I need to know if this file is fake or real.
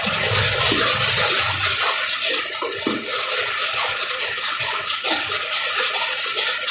real